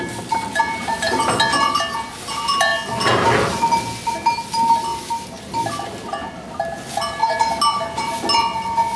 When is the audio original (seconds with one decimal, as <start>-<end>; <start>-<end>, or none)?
0.0-9.0